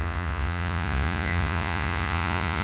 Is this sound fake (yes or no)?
yes